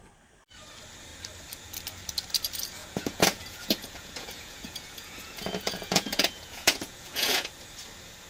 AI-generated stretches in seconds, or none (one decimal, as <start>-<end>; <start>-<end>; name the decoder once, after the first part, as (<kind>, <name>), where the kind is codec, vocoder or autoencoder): 2.8-7.5 (vocoder, Vocos)